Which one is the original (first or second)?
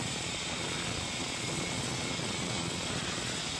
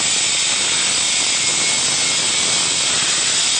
second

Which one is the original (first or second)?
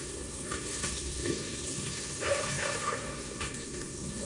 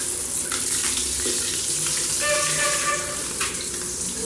second